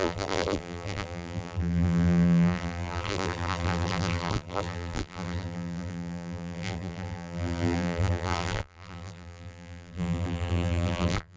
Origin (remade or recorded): remade